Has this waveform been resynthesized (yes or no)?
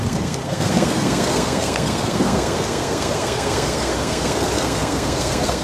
yes